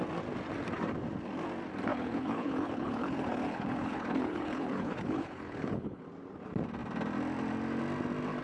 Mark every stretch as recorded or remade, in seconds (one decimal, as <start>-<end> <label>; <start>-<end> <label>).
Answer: 0.0-1.9 recorded; 1.9-6.0 remade; 6.0-8.4 recorded